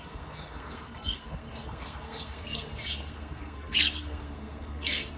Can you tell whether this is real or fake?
fake